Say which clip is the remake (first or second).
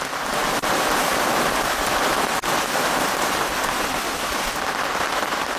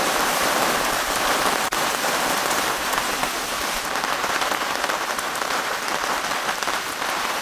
second